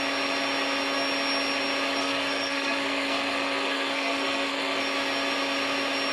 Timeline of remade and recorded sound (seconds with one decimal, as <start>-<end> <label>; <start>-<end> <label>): 0.0-2.0 recorded; 2.0-4.8 remade; 4.8-6.1 recorded